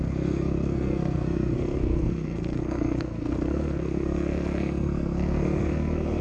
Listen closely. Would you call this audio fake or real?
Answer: fake